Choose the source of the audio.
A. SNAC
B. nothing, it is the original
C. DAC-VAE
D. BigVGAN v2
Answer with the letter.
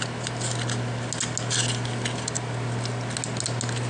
B